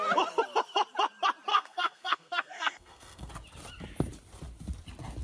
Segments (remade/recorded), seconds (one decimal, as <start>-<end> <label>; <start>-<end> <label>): 0.0-1.5 recorded; 1.5-3.3 remade; 3.3-5.2 recorded

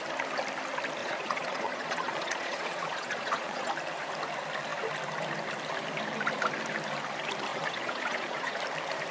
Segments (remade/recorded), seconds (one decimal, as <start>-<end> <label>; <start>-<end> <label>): 0.0-1.0 recorded; 1.0-3.7 remade; 3.7-7.5 recorded; 7.5-8.6 remade; 8.6-9.1 recorded

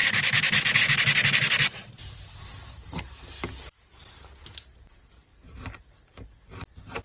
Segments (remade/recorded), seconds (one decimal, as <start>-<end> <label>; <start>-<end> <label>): 0.0-7.0 recorded